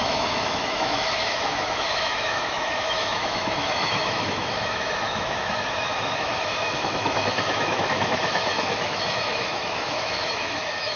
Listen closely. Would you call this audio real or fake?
fake